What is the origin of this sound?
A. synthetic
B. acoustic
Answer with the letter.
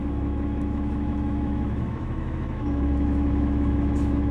A